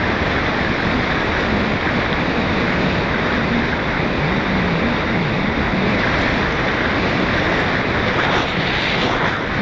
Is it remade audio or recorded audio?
recorded